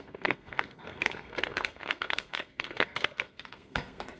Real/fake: fake